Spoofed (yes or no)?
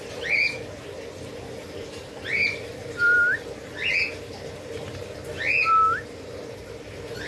no